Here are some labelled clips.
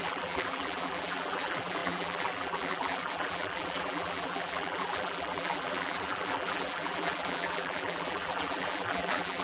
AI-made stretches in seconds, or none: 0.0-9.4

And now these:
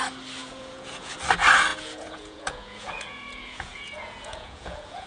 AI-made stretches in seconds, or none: 0.4-1.1; 1.7-5.1

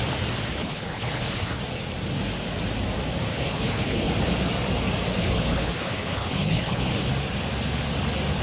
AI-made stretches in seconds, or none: 0.6-1.6; 3.3-4.1; 5.2-7.1

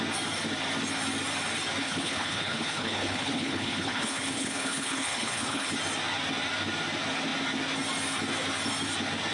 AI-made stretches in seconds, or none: 1.8-5.7

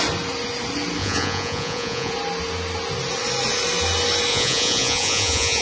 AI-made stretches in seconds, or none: 1.0-2.1; 4.3-5.6

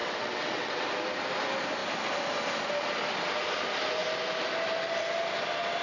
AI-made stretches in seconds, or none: 0.0-0.9

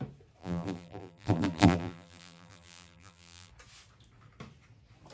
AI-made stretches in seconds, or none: 0.4-3.5

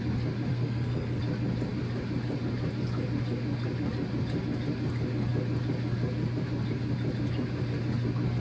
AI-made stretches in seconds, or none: 0.5-1.2